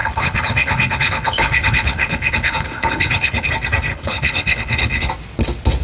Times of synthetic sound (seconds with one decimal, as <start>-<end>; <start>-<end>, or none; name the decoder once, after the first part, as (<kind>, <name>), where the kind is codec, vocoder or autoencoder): 0.0-3.5 (codec, HILCodec); 3.9-5.1